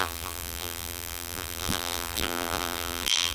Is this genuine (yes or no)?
no